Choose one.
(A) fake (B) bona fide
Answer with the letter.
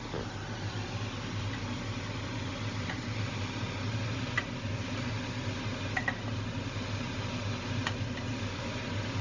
B